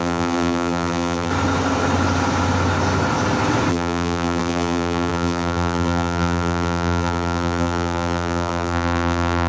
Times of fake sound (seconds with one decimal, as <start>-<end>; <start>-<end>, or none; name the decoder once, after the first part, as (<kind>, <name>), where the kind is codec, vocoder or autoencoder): 0.0-1.3 (vocoder, BigVGAN v2); 3.7-9.5

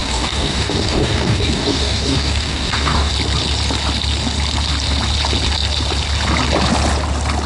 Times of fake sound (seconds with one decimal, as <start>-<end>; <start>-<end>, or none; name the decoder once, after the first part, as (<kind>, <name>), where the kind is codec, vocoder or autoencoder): 0.0-3.1 (codec, DAC)